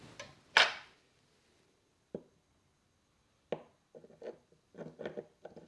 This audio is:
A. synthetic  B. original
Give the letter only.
B